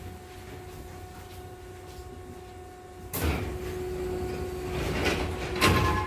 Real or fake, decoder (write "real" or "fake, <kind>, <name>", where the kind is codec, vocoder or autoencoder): real